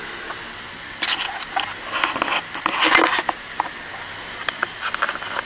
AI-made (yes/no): no